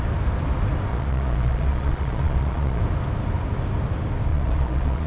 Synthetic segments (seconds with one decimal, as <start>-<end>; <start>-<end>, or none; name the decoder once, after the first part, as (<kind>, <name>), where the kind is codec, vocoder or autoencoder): 0.9-2.8 (vocoder, Vocos); 4.3-5.1